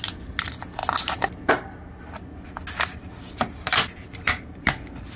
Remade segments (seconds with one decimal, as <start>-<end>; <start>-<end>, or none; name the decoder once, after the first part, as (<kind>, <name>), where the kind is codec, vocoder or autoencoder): none